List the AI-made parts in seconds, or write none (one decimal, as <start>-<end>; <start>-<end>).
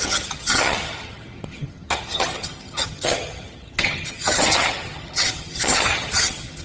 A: 0.0-6.6